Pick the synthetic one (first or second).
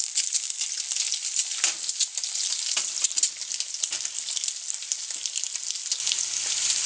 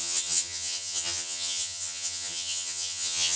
second